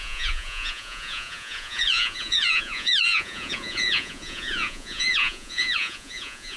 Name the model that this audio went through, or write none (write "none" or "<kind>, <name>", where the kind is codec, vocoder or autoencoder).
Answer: vocoder, Vocos